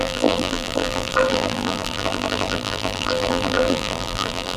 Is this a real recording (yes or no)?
no